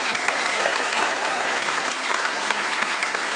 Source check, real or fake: fake